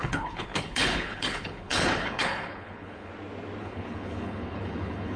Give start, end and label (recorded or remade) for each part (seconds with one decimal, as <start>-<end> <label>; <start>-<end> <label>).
0.0-3.1 remade; 3.1-3.6 recorded; 3.6-5.2 remade